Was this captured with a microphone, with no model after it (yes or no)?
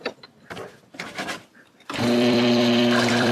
no